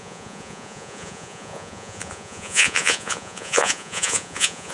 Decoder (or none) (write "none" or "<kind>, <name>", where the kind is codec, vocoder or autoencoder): vocoder, Vocos